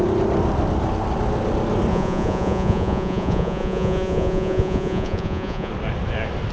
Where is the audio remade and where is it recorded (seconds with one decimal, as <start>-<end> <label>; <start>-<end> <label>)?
0.0-1.9 recorded; 1.9-5.7 remade; 5.7-6.5 recorded